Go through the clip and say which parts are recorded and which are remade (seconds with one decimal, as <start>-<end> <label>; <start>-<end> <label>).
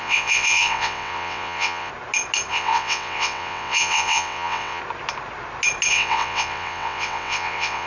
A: 0.0-1.9 remade; 1.9-2.5 recorded; 2.5-4.8 remade; 4.8-5.9 recorded; 5.9-7.9 remade